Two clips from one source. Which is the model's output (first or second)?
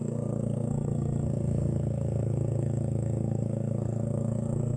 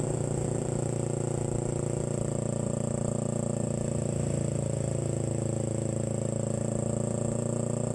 first